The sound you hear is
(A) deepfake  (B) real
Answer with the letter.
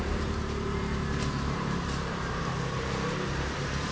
A